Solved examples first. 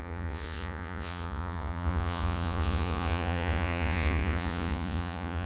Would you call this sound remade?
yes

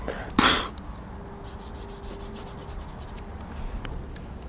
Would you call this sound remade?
no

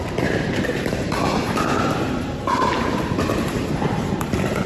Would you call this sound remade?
yes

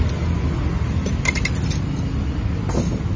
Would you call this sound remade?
no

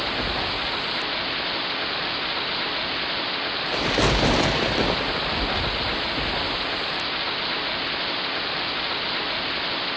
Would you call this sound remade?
no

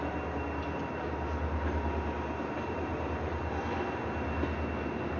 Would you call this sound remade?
no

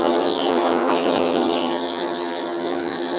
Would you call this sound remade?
yes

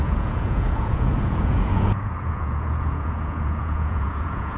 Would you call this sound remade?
yes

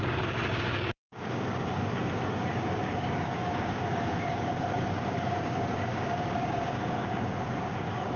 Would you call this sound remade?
yes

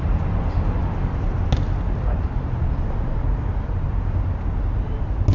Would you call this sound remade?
no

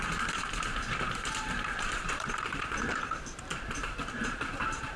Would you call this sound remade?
yes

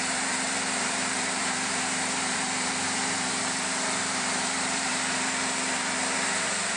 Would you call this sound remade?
yes